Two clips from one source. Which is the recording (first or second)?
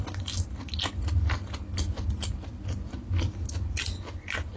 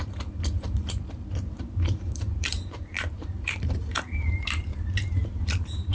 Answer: first